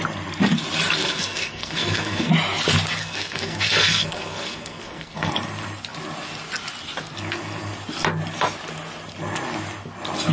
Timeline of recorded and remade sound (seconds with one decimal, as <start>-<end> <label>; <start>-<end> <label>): 0.0-1.0 recorded; 1.0-2.3 remade; 2.3-3.0 recorded; 3.0-5.3 remade; 5.3-10.3 recorded